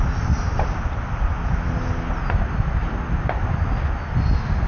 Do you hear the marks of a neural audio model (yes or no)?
no